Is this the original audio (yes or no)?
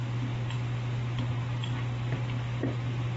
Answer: yes